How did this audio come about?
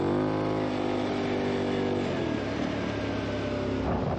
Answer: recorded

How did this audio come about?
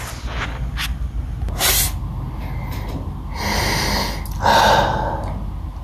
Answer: recorded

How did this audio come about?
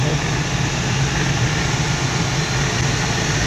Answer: recorded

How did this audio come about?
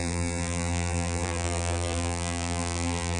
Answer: remade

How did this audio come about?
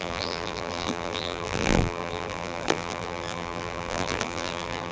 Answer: remade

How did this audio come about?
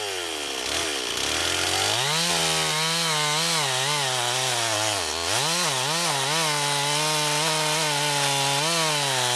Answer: recorded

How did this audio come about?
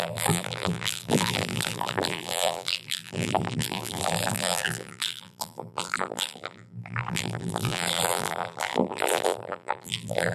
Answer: remade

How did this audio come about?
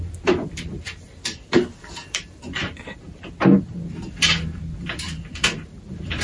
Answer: remade